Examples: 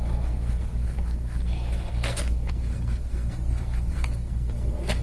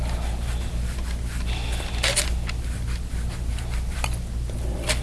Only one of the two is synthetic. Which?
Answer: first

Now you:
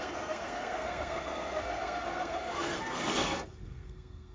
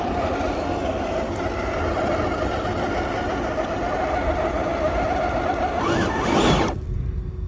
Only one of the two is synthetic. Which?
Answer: first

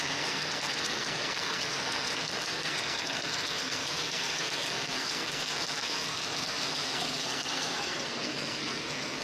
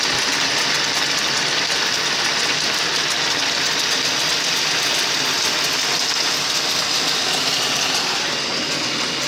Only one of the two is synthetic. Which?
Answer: first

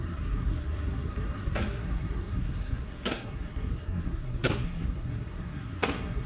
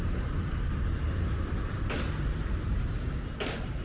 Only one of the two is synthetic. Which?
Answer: first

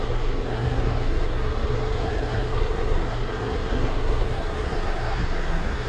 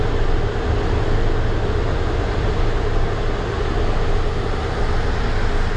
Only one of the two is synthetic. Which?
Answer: first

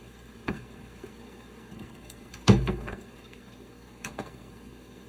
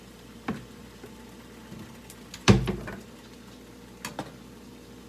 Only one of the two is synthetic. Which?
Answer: first